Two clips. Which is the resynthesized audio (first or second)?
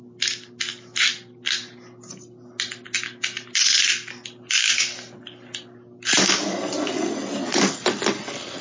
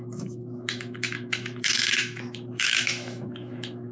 second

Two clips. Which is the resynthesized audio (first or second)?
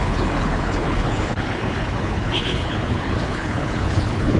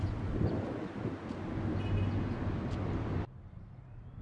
first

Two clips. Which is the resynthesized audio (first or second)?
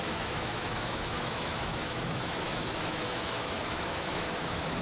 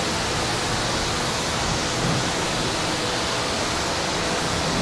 first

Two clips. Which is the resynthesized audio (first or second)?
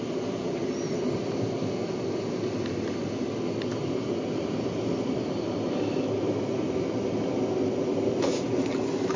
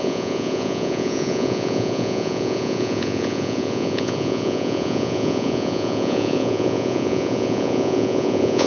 second